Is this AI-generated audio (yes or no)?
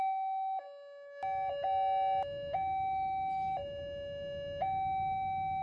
no